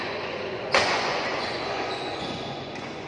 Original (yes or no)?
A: no